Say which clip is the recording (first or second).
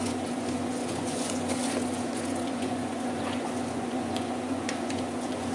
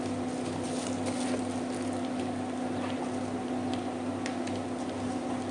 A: second